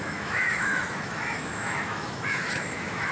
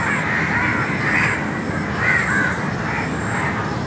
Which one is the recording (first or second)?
second